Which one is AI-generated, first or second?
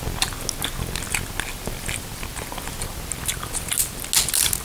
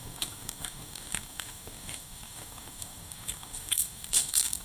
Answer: second